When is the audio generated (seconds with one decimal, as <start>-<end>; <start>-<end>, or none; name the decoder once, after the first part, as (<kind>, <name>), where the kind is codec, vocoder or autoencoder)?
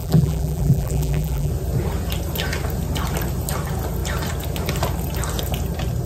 0.0-1.5 (vocoder, BigVGAN v2)